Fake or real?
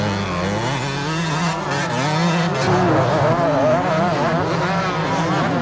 real